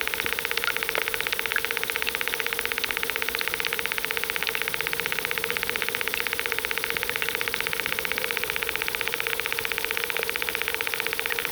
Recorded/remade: recorded